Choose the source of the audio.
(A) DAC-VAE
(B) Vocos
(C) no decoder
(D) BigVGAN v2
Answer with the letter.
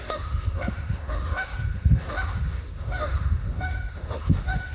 A